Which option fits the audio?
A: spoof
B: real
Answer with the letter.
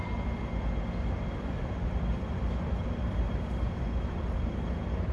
A